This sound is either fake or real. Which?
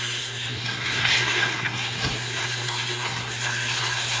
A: fake